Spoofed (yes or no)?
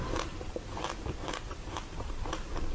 no